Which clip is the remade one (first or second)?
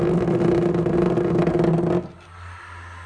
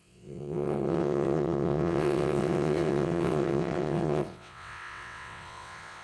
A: second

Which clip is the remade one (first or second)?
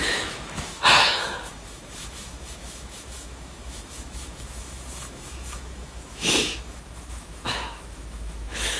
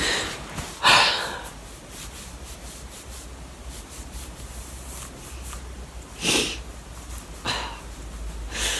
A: first